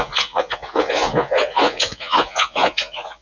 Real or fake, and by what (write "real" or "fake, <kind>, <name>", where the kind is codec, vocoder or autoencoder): fake, vocoder, Vocos